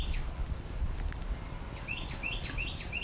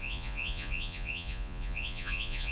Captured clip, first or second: first